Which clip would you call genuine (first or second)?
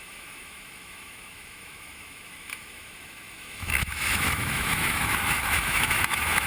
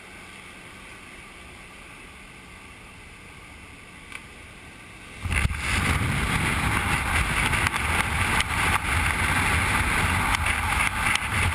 second